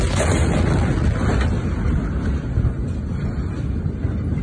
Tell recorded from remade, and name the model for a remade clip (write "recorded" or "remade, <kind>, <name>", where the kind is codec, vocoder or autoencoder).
recorded